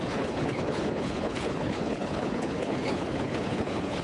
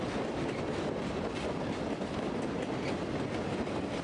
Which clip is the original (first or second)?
second